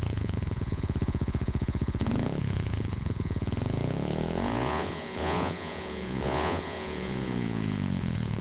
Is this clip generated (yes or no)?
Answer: yes